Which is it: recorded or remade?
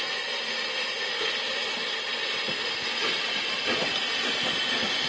recorded